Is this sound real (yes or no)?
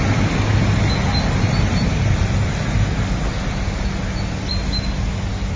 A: yes